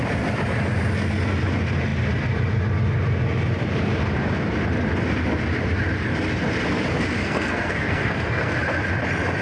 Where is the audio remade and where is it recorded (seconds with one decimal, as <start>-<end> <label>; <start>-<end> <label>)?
0.0-7.2 recorded; 7.2-8.5 remade; 8.5-9.4 recorded